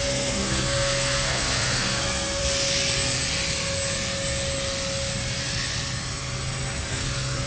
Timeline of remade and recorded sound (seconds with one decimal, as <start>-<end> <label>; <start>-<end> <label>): 0.0-2.4 remade; 2.4-6.9 recorded; 6.9-7.5 remade